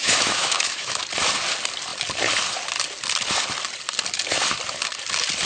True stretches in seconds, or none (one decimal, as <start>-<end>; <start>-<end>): 1.0-5.4